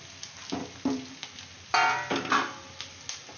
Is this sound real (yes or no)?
yes